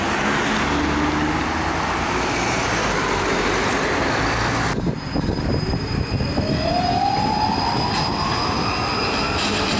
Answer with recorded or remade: recorded